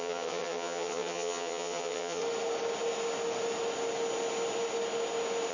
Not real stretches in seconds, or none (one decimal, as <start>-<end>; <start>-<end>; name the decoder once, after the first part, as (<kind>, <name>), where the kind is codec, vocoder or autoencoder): 0.0-2.2 (vocoder, HiFi-GAN)